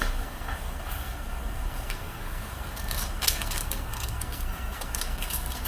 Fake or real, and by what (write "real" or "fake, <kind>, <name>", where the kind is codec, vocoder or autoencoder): fake, codec, SNAC